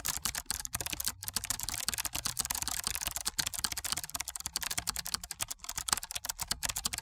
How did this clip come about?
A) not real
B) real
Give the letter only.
B